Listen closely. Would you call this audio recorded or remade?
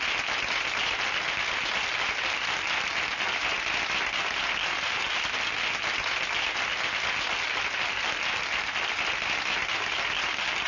recorded